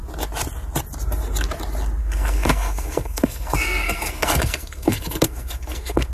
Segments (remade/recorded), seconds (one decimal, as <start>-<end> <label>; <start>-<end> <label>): 0.0-2.0 recorded; 2.0-6.1 remade